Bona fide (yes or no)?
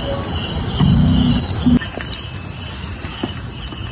yes